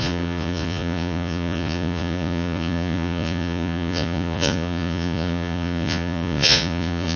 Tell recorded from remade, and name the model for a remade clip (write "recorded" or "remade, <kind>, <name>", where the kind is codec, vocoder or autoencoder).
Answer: remade, vocoder, Vocos